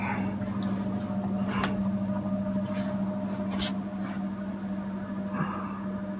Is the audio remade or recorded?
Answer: recorded